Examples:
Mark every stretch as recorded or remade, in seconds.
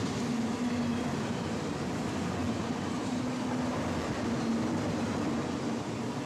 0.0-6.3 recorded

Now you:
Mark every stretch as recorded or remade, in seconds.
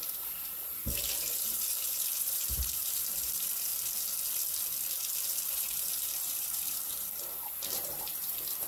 0.0-3.7 remade; 3.7-5.2 recorded; 5.2-8.7 remade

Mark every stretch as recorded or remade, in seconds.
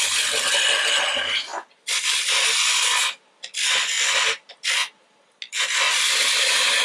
0.0-6.8 recorded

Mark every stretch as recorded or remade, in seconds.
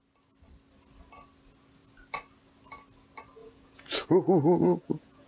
0.0-3.4 recorded; 3.4-5.3 remade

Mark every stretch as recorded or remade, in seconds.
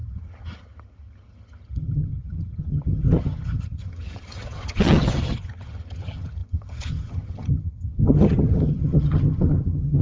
0.0-10.0 remade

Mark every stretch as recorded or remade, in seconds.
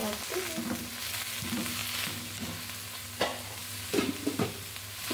0.0-3.3 recorded; 3.3-4.6 remade; 4.6-5.1 recorded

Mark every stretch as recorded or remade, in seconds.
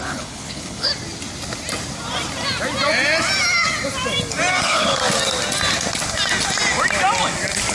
0.0-0.9 remade; 0.9-4.6 recorded; 4.6-5.0 remade; 5.0-7.7 recorded